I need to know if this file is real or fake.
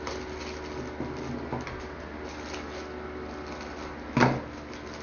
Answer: real